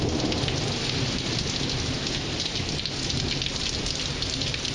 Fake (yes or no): no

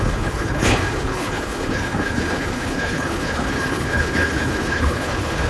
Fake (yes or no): yes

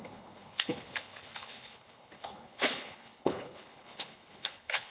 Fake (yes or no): yes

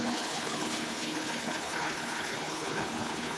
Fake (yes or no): yes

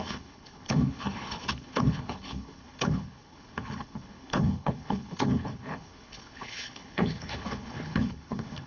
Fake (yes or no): yes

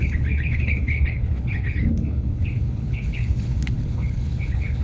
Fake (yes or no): yes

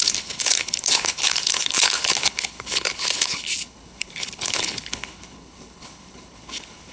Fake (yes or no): yes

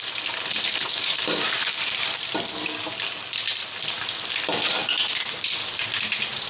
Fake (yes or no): no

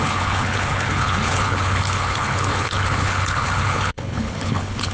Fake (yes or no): yes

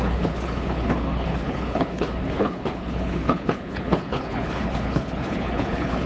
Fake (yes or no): yes